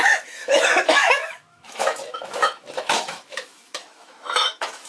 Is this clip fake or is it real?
fake